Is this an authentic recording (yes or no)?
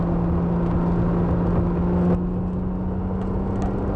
yes